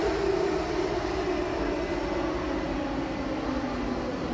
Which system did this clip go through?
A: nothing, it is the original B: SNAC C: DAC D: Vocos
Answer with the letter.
A